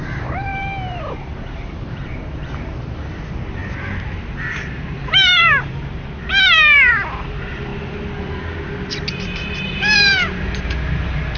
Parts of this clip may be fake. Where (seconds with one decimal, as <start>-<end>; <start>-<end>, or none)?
0.0-3.6; 4.4-7.7; 9.1-11.4